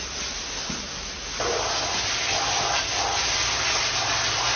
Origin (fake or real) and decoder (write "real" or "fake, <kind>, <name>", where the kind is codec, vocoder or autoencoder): real